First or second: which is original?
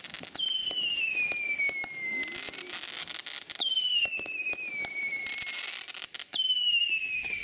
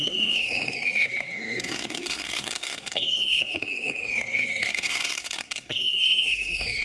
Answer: first